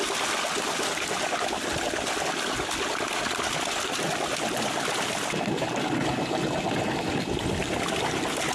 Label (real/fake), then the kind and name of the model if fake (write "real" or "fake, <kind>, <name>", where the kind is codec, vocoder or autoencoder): real